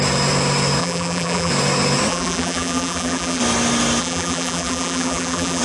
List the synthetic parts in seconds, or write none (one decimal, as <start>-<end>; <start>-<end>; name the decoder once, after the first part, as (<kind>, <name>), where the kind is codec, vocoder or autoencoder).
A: 0.8-1.5 (vocoder, BigVGAN v2); 2.1-3.4; 4.0-5.6